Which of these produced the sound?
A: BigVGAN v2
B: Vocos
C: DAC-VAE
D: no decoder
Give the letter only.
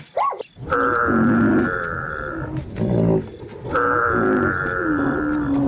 D